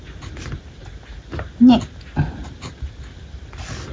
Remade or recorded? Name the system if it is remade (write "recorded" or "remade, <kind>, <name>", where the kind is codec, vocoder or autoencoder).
recorded